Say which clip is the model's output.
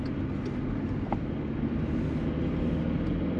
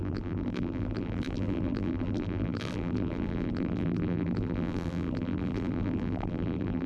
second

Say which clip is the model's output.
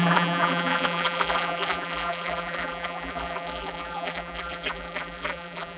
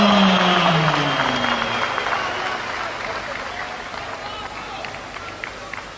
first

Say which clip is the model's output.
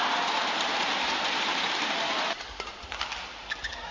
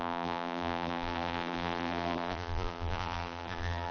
second